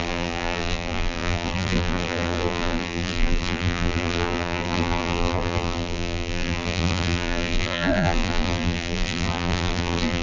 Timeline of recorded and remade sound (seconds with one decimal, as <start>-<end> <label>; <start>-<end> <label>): 0.0-10.2 remade